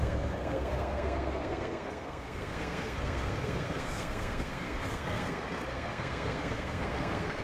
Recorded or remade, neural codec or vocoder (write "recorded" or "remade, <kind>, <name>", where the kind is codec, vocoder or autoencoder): remade, codec, SNAC